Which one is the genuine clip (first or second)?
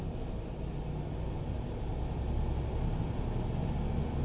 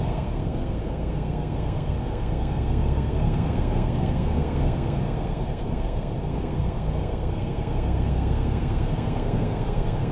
first